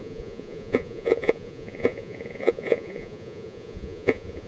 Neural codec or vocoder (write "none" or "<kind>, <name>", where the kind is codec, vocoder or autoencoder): vocoder, Vocos